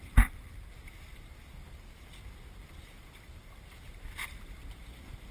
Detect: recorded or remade recorded